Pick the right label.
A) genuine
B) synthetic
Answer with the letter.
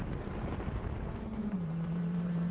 B